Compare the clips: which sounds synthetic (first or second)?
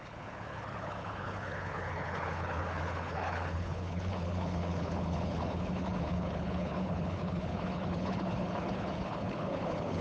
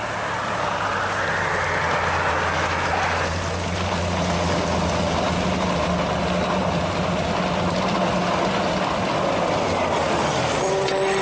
first